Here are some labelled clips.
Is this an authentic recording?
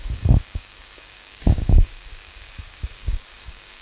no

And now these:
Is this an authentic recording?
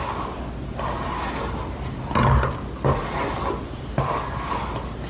yes